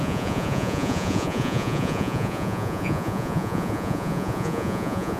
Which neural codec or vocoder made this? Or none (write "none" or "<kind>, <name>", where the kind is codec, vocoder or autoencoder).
vocoder, Vocos